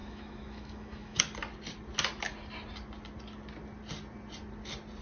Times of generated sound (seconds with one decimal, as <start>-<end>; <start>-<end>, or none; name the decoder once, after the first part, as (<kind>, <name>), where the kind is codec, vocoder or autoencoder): 0.0-1.2 (autoencoder, DAC-VAE)

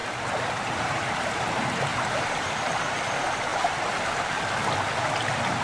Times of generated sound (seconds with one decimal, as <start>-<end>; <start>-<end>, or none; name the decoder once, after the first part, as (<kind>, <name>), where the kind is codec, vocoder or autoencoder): 0.0-1.5 (vocoder, BigVGAN v2); 1.9-2.5; 3.5-4.4

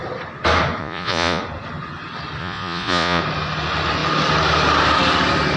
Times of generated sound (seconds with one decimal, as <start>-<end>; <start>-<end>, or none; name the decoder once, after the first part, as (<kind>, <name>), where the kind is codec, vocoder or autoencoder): 0.8-1.4 (vocoder, Vocos); 2.4-3.2